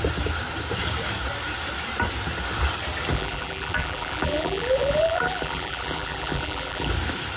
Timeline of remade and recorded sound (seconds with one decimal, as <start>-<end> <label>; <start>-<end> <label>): 0.0-3.1 recorded; 3.1-6.9 remade; 6.9-7.4 recorded